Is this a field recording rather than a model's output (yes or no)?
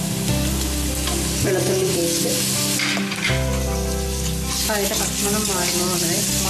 yes